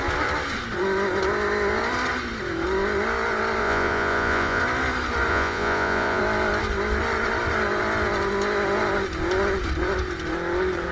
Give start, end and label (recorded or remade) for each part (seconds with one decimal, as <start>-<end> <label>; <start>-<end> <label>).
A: 0.0-3.6 recorded; 3.6-4.6 remade; 4.6-5.3 recorded; 5.3-6.2 remade; 6.2-10.9 recorded